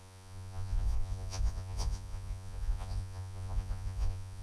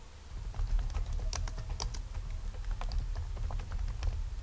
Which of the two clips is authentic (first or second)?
second